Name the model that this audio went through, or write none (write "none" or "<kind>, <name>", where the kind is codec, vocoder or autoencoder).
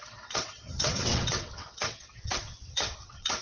vocoder, WaveNeXt